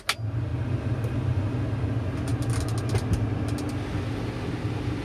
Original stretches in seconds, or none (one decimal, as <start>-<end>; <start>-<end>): 0.0-5.0